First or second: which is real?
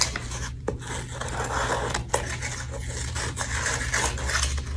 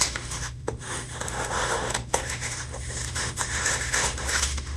first